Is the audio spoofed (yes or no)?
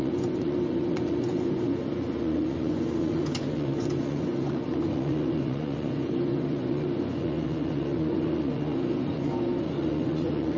yes